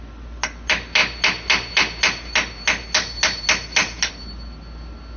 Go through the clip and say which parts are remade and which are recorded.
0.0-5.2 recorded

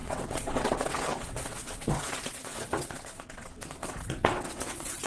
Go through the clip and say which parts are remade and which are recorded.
0.0-5.1 remade

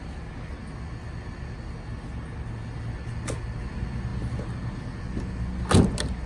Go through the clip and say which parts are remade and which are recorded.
0.0-6.3 recorded

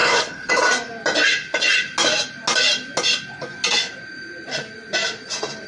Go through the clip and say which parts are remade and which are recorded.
0.0-0.5 remade; 0.5-5.7 recorded

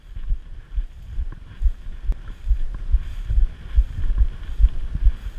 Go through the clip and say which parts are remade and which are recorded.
0.0-0.4 recorded; 0.4-3.6 remade; 3.6-5.4 recorded